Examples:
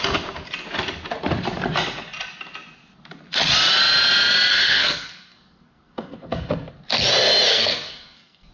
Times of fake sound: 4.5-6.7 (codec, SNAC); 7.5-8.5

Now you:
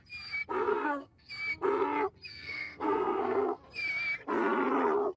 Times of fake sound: 0.7-1.3 (codec, SNAC); 2.3-3.6